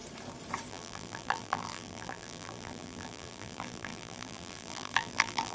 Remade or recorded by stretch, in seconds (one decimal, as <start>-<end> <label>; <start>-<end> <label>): 0.0-0.7 recorded; 0.7-5.5 remade